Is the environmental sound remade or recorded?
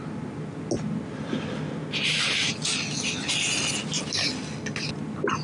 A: recorded